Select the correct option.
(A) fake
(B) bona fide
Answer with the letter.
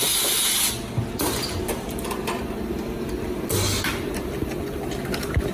B